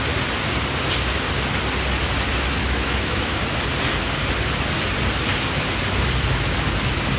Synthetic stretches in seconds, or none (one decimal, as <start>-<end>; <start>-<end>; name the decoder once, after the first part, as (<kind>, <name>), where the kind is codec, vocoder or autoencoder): 2.6-3.4 (autoencoder, DAC-VAE)